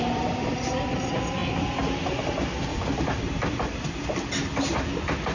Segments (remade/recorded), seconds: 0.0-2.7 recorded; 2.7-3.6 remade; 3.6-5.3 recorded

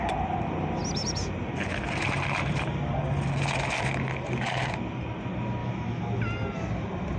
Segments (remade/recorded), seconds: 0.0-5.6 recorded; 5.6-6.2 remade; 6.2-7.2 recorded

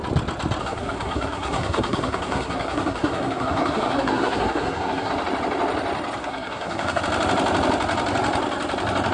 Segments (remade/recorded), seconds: 0.0-0.6 recorded; 0.6-5.1 remade; 5.1-6.2 recorded; 6.2-7.0 remade; 7.0-9.1 recorded

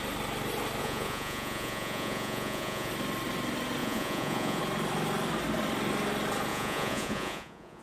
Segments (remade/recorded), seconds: 0.0-0.8 recorded; 0.8-2.9 remade; 2.9-3.8 recorded; 3.8-4.6 remade; 4.6-6.5 recorded; 6.5-7.8 remade

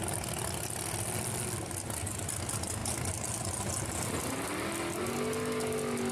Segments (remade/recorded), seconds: 0.0-6.1 recorded

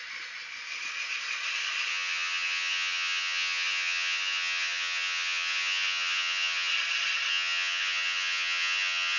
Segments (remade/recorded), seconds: 0.0-1.9 recorded; 1.9-6.7 remade; 6.7-7.3 recorded; 7.3-9.2 remade

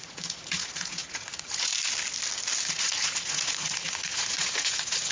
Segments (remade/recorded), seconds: 0.0-1.7 remade; 1.7-2.7 recorded; 2.7-5.1 remade